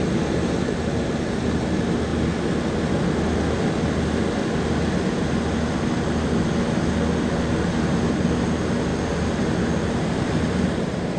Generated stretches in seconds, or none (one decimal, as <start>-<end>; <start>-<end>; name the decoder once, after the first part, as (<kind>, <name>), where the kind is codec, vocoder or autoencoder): 0.0-2.1 (vocoder, BigVGAN v2); 7.2-8.9; 9.9-11.2